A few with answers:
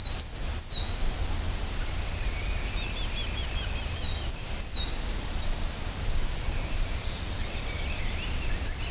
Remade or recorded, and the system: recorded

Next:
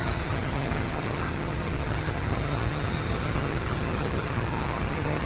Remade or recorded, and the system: remade, vocoder, HiFi-GAN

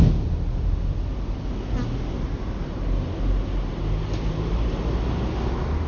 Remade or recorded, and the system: recorded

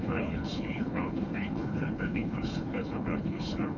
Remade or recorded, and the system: remade, codec, HILCodec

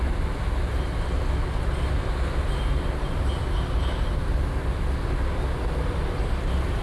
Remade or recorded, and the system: recorded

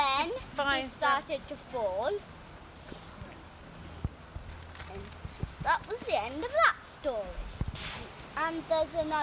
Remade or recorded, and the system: recorded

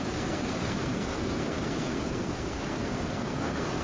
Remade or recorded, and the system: remade, codec, SNAC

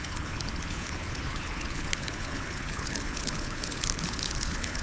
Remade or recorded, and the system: remade, codec, HILCodec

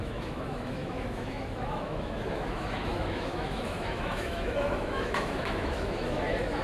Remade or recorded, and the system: remade, autoencoder, DAC-VAE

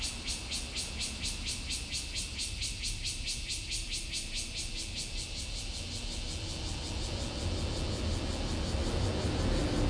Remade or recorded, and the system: recorded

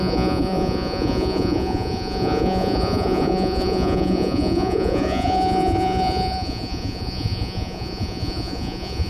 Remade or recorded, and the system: remade, vocoder, Vocos